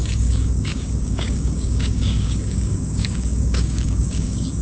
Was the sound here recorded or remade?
remade